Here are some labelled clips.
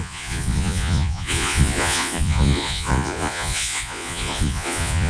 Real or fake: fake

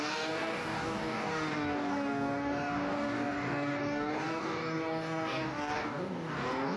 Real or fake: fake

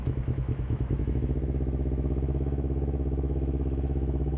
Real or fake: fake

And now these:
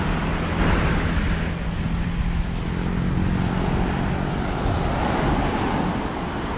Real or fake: real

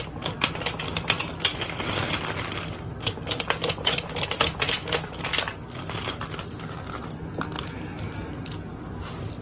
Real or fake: real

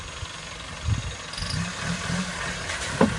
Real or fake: real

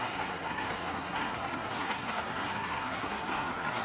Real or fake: fake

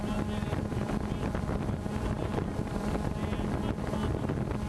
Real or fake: real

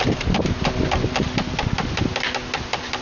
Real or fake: real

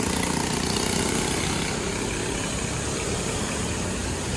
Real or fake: real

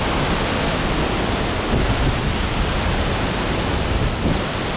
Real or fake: fake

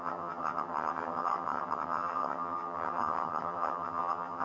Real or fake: fake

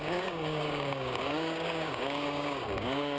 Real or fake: fake